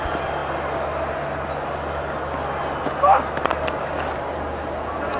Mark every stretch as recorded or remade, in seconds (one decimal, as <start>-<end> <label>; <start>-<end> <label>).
0.0-5.2 recorded